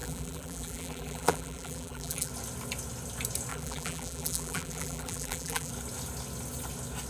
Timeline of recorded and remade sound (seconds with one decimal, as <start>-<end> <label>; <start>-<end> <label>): 0.0-2.3 remade; 2.3-3.5 recorded; 3.5-5.7 remade; 5.7-7.1 recorded